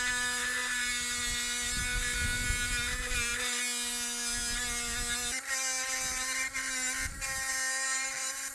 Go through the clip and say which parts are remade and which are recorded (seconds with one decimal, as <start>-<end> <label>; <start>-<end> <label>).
0.0-8.5 recorded